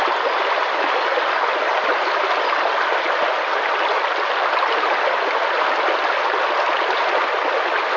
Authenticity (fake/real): real